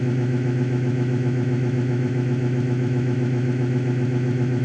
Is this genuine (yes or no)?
no